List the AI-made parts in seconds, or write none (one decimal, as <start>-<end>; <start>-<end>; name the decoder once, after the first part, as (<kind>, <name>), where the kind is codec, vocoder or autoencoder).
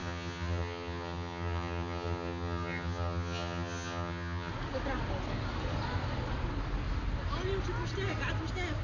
0.0-4.5 (vocoder, HiFi-GAN)